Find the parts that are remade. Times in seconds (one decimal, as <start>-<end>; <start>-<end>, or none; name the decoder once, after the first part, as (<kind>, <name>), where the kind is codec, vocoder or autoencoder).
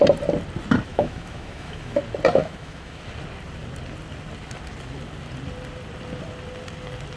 0.9-2.0 (autoencoder, DAC-VAE); 2.4-3.0